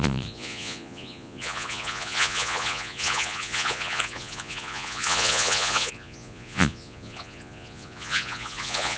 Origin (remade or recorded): remade